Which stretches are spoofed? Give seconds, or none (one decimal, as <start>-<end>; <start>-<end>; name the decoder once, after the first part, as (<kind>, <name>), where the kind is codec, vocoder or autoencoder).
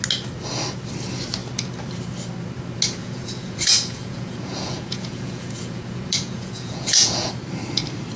3.0-7.3 (vocoder, Vocos)